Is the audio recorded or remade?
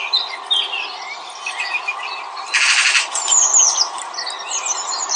recorded